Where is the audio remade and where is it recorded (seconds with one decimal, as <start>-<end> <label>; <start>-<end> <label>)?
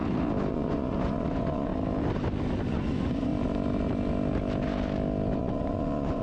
0.0-0.5 recorded; 0.5-1.7 remade; 1.7-2.7 recorded; 2.7-3.3 remade; 3.3-5.4 recorded; 5.4-6.2 remade